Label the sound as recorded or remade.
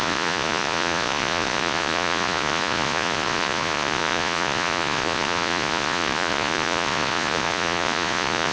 remade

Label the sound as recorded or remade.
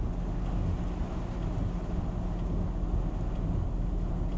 recorded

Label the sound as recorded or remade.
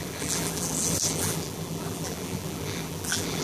remade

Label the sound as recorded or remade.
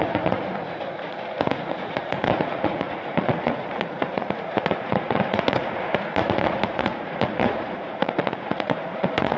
remade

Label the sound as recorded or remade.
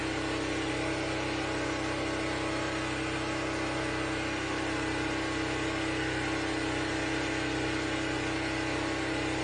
recorded